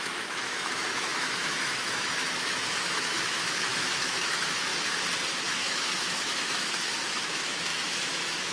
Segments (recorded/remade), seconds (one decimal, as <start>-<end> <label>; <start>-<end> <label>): 0.0-4.7 remade; 4.7-5.5 recorded; 5.5-8.5 remade